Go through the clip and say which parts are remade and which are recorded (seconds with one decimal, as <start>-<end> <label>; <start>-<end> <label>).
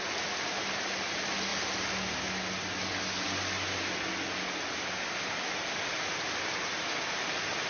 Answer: 0.0-7.7 recorded